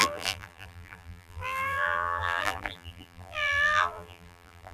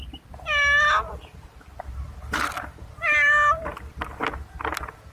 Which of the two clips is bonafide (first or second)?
second